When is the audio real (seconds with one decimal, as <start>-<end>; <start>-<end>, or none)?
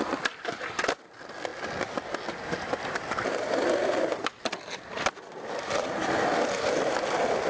0.0-7.5